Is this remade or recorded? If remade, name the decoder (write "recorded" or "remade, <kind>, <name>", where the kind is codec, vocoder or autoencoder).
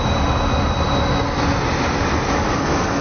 recorded